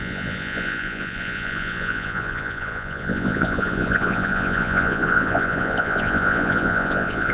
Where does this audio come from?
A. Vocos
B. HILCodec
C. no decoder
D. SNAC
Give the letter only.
A